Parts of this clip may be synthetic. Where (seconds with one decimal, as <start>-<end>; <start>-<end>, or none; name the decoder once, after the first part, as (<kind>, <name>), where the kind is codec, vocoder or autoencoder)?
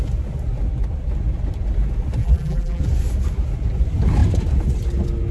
2.2-2.8 (vocoder, BigVGAN v2)